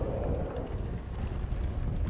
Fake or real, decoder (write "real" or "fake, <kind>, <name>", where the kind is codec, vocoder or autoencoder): real